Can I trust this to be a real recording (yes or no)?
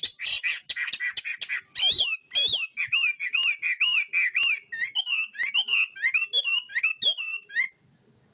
yes